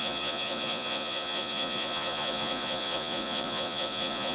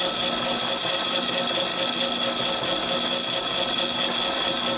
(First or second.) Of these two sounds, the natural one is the second